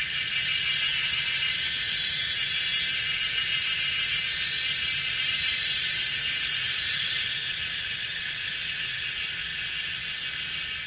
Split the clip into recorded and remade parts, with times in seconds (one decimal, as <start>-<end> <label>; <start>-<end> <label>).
0.0-0.5 remade; 0.5-1.8 recorded; 1.8-2.7 remade; 2.7-5.1 recorded; 5.1-9.5 remade; 9.5-10.9 recorded